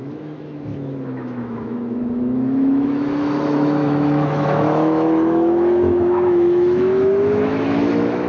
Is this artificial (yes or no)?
yes